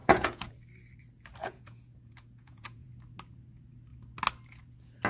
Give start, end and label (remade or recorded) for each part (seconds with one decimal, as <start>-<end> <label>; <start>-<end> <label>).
0.0-0.5 remade; 0.5-1.4 recorded; 1.4-2.9 remade; 2.9-5.1 recorded